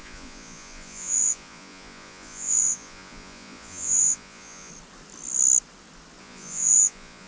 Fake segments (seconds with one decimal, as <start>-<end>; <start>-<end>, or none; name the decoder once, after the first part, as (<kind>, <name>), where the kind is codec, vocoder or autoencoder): 0.0-4.7 (vocoder, Vocos); 6.2-7.3